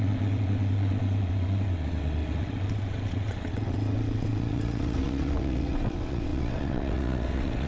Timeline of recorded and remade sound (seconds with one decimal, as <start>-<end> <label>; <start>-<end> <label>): 0.0-7.7 remade